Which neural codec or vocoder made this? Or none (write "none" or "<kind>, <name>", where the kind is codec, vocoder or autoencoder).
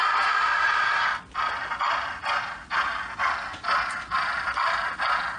none